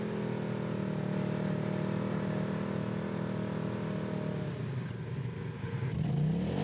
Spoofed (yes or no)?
no